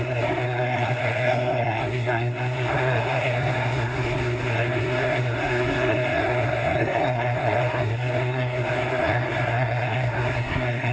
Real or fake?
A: fake